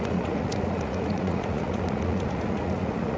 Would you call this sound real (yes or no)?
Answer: no